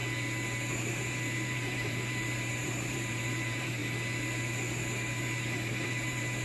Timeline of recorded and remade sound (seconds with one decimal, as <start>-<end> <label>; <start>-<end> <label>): 0.0-0.7 recorded; 0.7-3.8 remade; 3.8-5.2 recorded; 5.2-6.4 remade